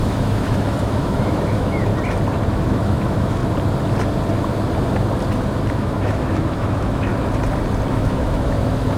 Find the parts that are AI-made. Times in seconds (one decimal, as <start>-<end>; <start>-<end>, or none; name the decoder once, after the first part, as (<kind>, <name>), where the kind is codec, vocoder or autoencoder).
0.0-1.9 (autoencoder, DAC-VAE); 2.5-3.4; 5.7-7.1; 7.9-9.0